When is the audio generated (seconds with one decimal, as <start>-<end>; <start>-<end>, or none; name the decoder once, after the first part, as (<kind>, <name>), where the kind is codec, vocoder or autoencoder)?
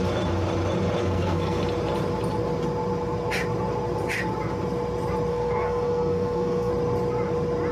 1.0-1.6 (codec, SNAC); 5.3-6.7